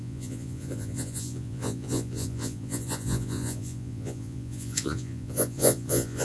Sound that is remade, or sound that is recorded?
remade